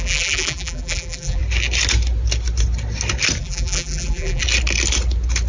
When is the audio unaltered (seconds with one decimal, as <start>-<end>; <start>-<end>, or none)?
1.4-3.4; 4.4-5.5